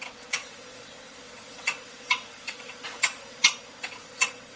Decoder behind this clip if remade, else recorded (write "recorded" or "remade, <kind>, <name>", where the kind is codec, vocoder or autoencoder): remade, vocoder, WaveNeXt